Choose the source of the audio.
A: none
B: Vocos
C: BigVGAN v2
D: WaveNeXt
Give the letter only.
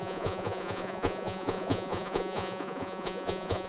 B